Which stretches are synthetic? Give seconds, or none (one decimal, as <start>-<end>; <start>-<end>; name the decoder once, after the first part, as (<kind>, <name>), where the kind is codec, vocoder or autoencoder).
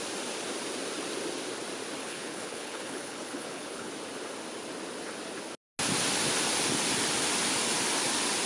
2.0-3.9 (codec, HILCodec)